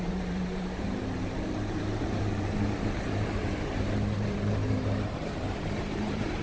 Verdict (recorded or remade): remade